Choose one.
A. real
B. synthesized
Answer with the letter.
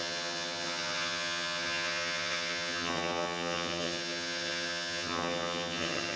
B